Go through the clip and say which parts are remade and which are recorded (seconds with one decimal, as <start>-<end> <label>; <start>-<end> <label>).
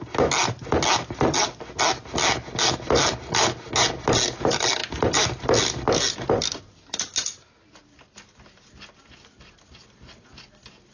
0.0-10.9 recorded